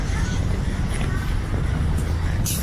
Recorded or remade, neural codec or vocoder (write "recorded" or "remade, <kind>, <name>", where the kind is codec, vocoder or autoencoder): recorded